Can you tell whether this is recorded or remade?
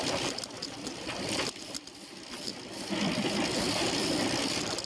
recorded